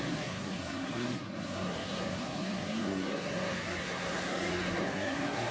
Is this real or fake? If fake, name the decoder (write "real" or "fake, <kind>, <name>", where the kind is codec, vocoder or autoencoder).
fake, codec, SNAC